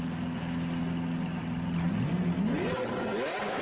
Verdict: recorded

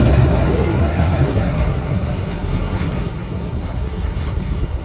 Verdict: remade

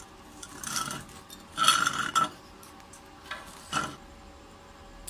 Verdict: recorded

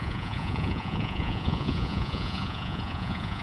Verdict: remade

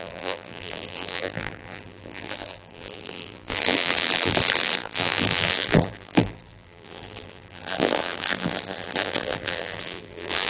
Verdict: remade